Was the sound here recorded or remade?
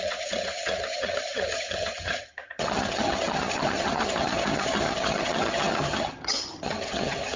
remade